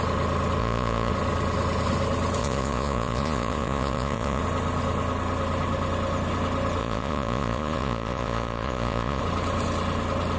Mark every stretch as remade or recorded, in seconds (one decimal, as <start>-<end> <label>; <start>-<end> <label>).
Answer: 0.0-0.6 recorded; 0.6-1.1 remade; 1.1-2.4 recorded; 2.4-4.4 remade; 4.4-6.8 recorded; 6.8-9.2 remade; 9.2-10.4 recorded